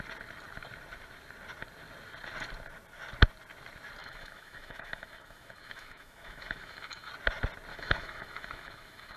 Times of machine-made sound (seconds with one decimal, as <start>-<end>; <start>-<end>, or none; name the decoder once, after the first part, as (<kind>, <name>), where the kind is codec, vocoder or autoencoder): 4.0-7.1 (autoencoder, DAC-VAE); 7.7-9.2